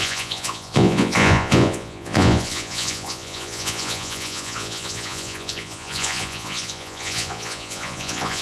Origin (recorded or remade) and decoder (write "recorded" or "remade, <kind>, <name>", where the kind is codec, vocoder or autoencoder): remade, vocoder, Vocos